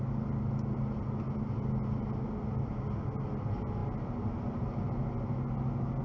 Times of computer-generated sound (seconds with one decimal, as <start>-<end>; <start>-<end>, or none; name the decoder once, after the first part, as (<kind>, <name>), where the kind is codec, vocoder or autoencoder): none